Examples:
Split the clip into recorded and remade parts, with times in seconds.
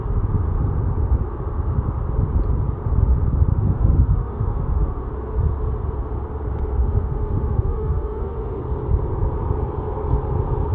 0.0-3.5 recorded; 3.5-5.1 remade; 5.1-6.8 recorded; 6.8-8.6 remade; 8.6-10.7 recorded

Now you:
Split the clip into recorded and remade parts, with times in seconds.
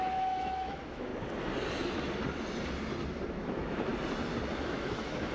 0.0-1.1 remade; 1.1-3.3 recorded; 3.3-3.9 remade; 3.9-4.5 recorded; 4.5-5.3 remade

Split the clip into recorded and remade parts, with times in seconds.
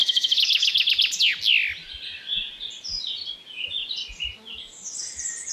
0.0-0.9 remade; 0.9-5.5 recorded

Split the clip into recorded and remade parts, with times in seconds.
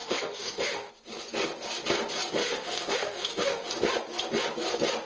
0.0-0.9 remade; 0.9-2.4 recorded; 2.4-3.7 remade; 3.7-5.0 recorded